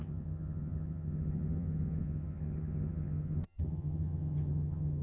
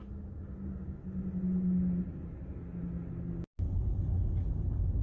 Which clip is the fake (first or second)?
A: first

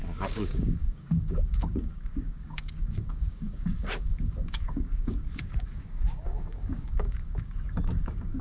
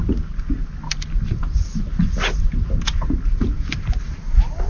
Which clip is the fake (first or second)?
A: first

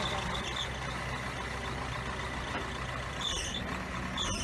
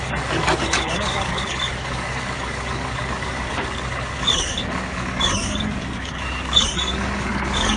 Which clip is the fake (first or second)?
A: second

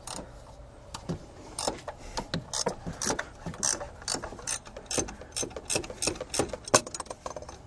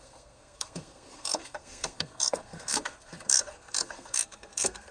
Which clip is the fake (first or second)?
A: second